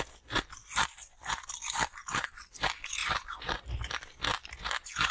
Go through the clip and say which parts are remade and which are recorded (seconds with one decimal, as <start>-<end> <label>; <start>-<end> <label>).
0.0-3.0 recorded; 3.0-3.9 remade; 3.9-5.1 recorded